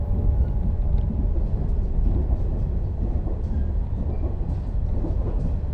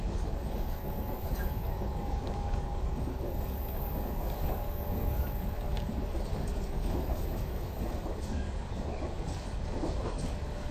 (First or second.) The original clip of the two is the first